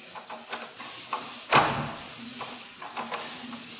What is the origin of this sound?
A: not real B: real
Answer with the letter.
B